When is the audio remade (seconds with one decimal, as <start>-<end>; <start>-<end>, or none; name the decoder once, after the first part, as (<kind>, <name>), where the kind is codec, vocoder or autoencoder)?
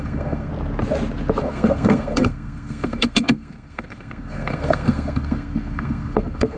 0.0-0.5 (codec, SNAC); 1.4-6.6